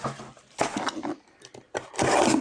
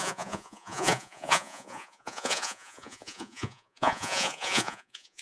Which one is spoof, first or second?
second